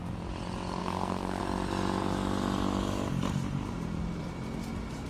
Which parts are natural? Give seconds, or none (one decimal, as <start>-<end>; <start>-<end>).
0.0-0.8; 1.4-5.1